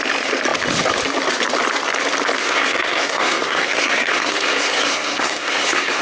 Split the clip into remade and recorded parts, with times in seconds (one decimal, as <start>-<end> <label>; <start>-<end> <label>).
0.0-2.4 recorded; 2.4-6.0 remade